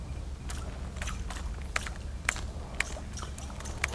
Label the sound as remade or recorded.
recorded